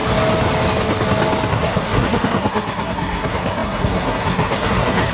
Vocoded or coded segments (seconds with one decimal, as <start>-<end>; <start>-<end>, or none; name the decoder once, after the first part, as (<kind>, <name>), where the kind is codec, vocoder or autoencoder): 1.5-5.1 (codec, SNAC)